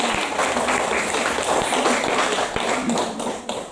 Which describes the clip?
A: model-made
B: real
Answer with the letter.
B